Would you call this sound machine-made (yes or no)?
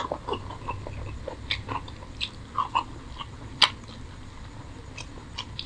no